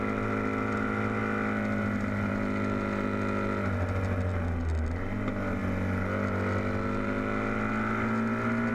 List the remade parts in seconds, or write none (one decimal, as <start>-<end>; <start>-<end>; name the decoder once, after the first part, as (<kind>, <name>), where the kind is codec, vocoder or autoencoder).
none